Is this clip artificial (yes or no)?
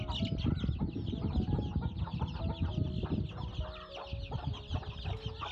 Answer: no